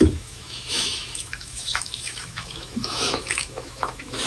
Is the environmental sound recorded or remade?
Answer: remade